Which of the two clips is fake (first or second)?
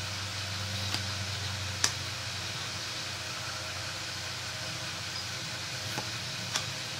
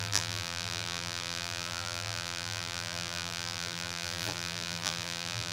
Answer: second